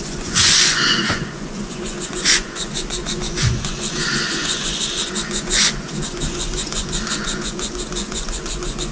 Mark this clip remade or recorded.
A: remade